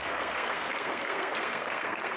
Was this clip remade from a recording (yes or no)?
yes